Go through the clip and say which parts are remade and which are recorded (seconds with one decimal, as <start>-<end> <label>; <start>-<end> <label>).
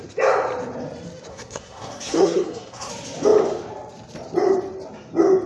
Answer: 0.0-1.3 recorded; 1.3-2.9 remade; 2.9-5.5 recorded